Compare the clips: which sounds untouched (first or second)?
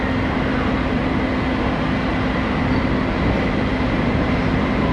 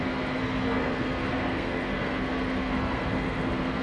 first